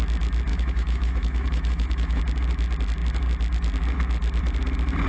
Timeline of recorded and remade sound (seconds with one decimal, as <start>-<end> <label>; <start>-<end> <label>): 0.0-0.5 recorded; 0.5-2.2 remade; 2.2-5.1 recorded